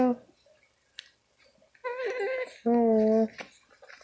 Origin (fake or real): real